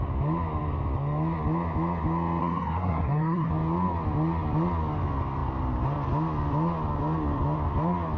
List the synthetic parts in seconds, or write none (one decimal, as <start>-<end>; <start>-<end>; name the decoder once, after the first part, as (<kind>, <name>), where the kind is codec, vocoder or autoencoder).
2.4-3.5 (codec, SNAC)